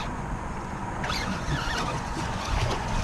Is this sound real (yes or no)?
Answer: no